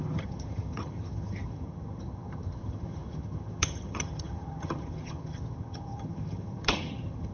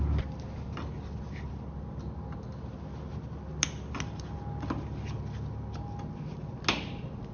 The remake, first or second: first